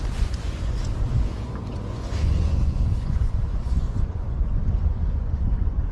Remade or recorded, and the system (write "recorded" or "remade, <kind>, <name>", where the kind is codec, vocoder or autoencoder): remade, vocoder, Vocos